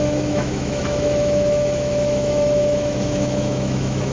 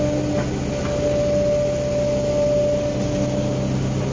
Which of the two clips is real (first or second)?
second